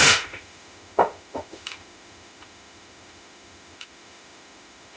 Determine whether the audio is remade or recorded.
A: remade